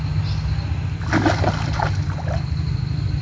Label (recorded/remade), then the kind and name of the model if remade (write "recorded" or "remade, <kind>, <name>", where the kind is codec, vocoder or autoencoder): recorded